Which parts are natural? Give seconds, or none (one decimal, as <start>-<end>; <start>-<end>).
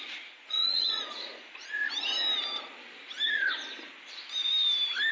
1.8-5.1